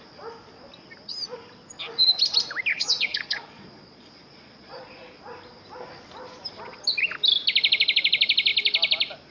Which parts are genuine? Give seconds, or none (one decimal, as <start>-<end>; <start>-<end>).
0.0-2.7; 5.2-9.3